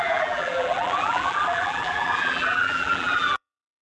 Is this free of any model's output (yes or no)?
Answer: no